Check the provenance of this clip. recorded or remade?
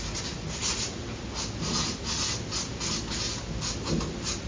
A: recorded